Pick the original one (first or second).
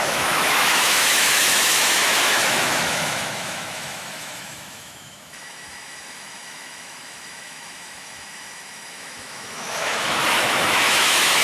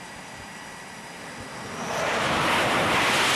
second